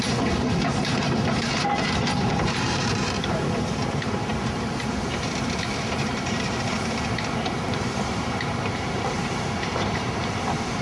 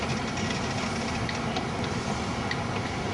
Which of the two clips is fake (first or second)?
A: first